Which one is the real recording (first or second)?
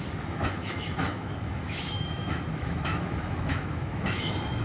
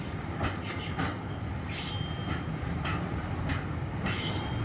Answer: second